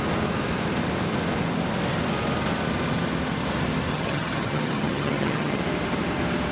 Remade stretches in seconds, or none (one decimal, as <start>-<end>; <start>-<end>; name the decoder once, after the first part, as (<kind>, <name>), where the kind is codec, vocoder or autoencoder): 3.9-5.6 (vocoder, HiFi-GAN)